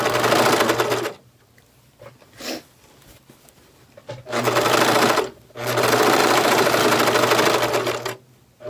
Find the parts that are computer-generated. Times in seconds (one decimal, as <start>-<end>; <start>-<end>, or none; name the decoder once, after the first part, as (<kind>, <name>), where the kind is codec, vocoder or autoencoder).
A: 6.2-6.8 (vocoder, BigVGAN v2)